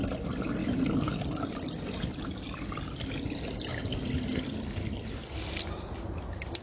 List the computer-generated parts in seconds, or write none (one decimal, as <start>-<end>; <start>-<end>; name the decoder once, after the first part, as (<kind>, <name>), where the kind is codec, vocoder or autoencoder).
none